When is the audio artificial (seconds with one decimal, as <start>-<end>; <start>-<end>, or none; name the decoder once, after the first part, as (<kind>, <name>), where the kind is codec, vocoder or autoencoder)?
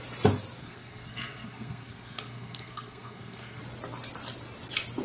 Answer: 0.6-3.6 (codec, SNAC)